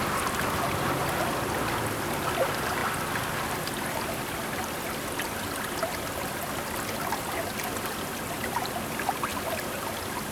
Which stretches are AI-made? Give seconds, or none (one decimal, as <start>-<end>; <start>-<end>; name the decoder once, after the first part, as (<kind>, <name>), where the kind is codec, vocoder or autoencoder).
none